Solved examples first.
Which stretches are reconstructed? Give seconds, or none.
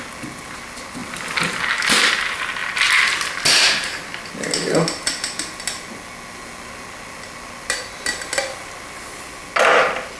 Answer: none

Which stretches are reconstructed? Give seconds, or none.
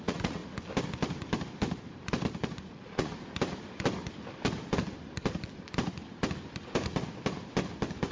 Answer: 0.0-0.4 (vocoder, Vocos); 2.7-3.1